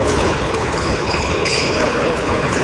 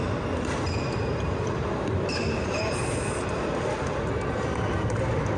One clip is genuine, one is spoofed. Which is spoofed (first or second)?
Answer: first